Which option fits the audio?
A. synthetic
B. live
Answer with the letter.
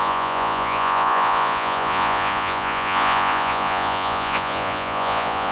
A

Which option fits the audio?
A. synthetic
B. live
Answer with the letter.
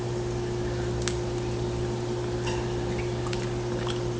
B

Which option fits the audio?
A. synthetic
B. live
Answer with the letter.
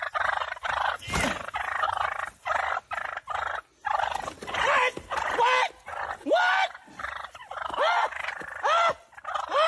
B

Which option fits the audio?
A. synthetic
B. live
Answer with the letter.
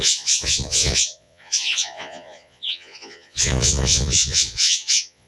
A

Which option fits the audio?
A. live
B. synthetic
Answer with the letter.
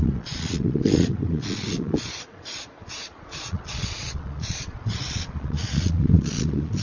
B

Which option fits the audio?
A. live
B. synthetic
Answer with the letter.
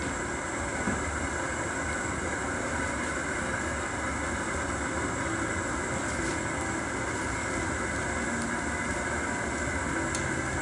A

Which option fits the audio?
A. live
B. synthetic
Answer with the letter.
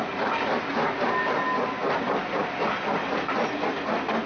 A